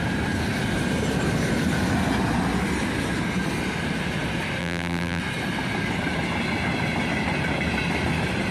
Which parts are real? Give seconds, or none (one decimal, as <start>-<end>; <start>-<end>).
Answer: 0.0-4.6; 5.2-8.5